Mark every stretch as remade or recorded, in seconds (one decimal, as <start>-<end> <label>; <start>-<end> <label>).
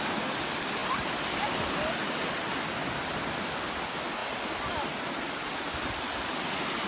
0.0-6.9 recorded